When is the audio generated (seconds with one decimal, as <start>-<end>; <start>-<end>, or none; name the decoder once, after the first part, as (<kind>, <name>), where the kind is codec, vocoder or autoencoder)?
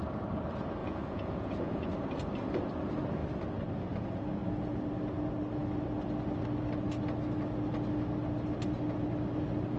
0.8-1.9 (vocoder, Vocos)